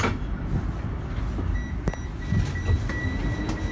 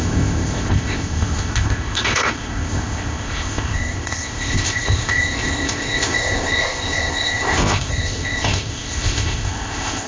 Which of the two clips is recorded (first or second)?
first